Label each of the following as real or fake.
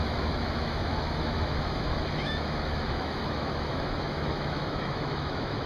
fake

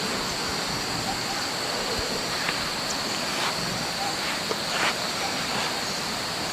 real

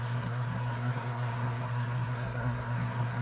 fake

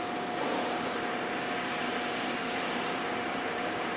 real